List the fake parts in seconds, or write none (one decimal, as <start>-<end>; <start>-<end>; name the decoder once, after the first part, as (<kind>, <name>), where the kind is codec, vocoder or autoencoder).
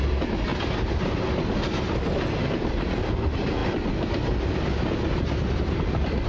none